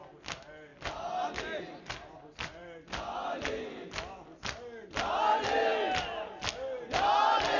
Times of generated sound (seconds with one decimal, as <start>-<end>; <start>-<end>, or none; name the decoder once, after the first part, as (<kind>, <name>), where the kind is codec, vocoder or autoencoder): none